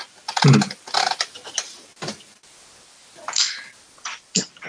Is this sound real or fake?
real